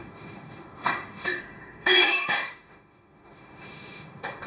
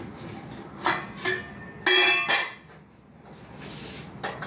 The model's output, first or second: first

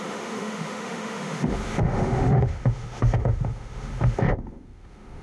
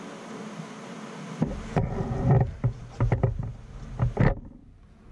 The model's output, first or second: first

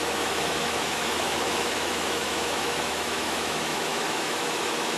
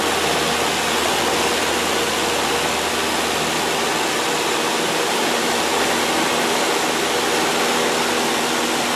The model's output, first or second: first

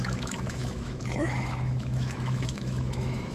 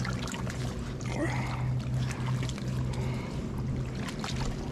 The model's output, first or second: first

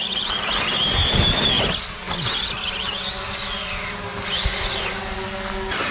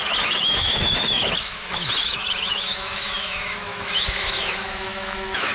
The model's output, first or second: second